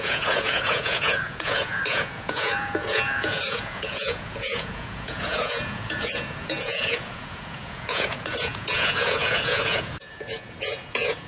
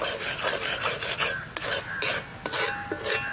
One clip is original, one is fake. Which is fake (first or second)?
first